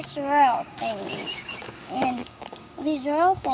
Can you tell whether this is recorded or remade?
remade